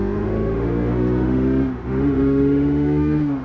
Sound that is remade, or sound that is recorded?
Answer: remade